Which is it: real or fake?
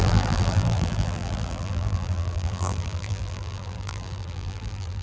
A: fake